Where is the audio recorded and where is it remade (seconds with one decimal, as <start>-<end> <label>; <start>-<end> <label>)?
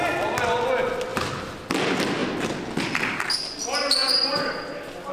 0.0-1.1 recorded; 1.1-1.7 remade; 1.7-5.1 recorded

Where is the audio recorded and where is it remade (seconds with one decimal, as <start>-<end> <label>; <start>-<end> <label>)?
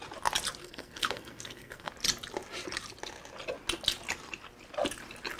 0.0-0.6 recorded; 0.6-1.9 remade; 1.9-5.4 recorded